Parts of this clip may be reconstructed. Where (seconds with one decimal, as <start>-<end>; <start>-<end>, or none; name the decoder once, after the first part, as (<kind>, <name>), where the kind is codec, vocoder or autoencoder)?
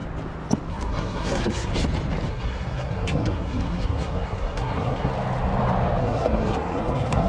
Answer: 0.7-1.7 (codec, SNAC); 2.3-5.1; 6.0-7.3